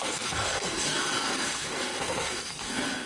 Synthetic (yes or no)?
yes